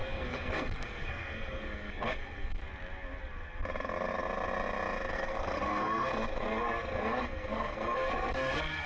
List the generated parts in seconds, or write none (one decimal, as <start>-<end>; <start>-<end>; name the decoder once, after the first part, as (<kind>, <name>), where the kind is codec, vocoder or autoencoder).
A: 0.0-2.6 (codec, SNAC); 5.1-8.9